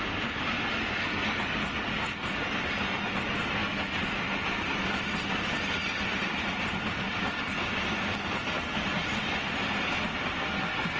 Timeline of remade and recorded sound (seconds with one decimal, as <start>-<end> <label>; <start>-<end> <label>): 0.0-11.0 recorded